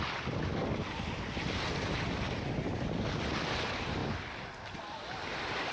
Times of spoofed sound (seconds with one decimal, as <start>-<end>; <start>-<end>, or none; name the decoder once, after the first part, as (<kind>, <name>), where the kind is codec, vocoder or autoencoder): none